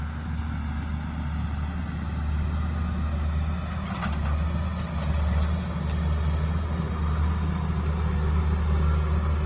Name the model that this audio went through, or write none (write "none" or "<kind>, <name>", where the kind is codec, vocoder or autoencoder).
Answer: none